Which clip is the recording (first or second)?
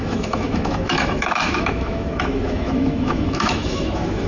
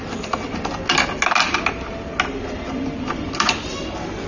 second